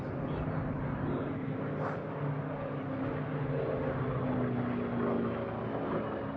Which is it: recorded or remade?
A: recorded